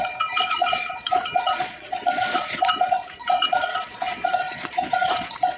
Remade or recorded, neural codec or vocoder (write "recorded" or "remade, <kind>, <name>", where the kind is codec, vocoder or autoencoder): remade, vocoder, Vocos